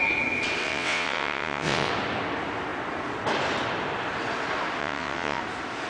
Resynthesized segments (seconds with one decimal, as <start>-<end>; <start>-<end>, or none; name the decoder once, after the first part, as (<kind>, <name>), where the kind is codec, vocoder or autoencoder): 0.6-1.9 (vocoder, WaveNeXt); 4.8-5.4